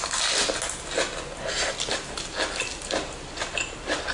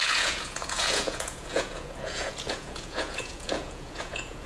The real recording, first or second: first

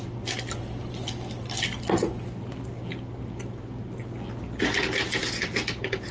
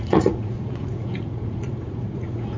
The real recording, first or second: first